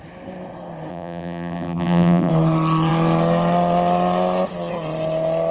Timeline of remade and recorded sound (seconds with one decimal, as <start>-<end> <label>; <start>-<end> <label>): 0.0-0.9 recorded; 0.9-2.3 remade; 2.3-5.5 recorded